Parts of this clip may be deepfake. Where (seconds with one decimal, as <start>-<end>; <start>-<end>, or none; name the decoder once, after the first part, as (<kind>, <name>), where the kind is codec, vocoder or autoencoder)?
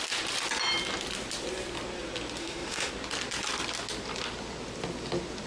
2.4-2.9 (autoencoder, DAC-VAE)